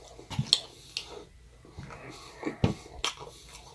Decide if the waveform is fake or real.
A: real